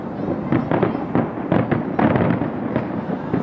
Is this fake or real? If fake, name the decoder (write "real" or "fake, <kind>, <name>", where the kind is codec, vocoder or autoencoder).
real